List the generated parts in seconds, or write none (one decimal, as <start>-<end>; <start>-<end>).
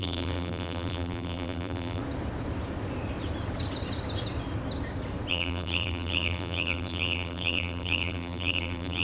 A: 0.0-2.0; 5.3-9.0